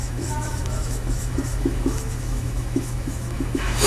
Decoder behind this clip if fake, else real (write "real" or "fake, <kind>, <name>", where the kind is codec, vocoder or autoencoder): fake, autoencoder, DAC-VAE